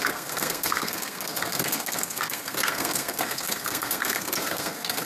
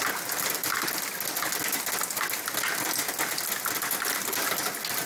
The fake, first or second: first